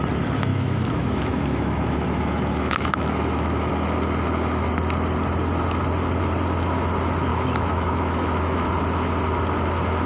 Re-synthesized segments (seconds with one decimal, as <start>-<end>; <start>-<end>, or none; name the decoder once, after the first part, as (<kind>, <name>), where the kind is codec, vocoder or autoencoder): 0.5-3.7 (autoencoder, DAC-VAE); 7.3-8.7